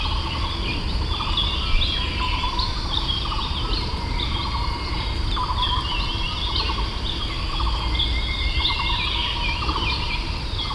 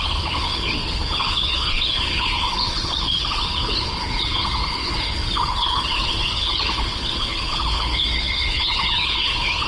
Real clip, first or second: first